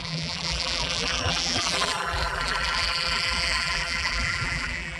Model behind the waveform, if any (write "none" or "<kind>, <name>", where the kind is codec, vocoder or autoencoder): vocoder, BigVGAN v2